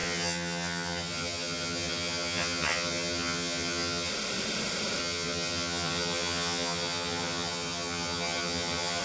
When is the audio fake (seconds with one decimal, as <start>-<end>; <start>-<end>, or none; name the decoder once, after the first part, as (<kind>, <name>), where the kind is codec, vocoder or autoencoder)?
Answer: 0.0-4.1 (vocoder, HiFi-GAN); 5.0-9.0